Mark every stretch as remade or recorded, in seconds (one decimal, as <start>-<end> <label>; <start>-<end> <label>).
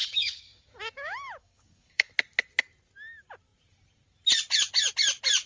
0.0-0.7 remade; 0.7-1.4 recorded; 1.4-2.1 remade; 2.1-5.5 recorded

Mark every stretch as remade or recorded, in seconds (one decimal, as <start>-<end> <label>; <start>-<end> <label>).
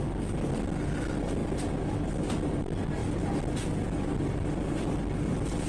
0.0-5.7 recorded